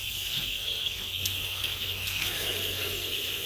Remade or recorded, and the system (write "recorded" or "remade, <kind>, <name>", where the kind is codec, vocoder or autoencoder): remade, codec, SNAC